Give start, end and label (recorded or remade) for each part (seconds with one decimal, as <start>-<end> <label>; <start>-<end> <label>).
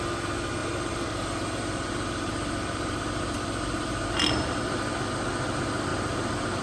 0.0-0.6 recorded; 0.6-4.6 remade; 4.6-5.9 recorded; 5.9-6.6 remade